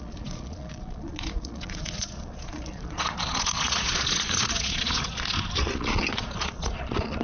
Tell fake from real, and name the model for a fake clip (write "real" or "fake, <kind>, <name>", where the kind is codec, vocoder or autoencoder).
fake, vocoder, Vocos